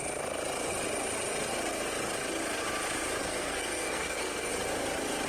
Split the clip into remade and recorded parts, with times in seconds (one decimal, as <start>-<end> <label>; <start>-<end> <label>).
0.0-3.2 recorded; 3.2-4.5 remade; 4.5-5.3 recorded